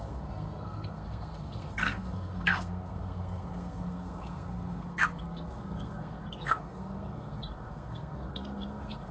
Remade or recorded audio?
remade